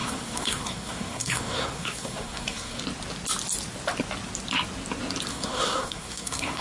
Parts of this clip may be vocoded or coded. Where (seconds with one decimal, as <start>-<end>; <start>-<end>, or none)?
0.0-2.8; 5.3-6.6